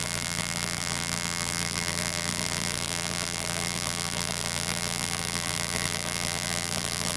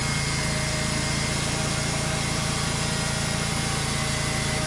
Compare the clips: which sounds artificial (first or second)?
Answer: first